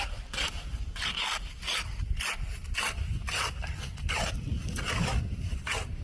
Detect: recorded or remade recorded